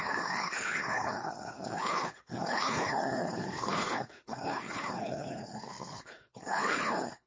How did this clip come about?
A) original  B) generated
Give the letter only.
B